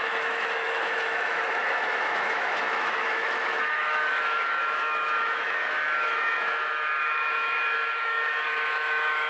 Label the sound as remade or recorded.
remade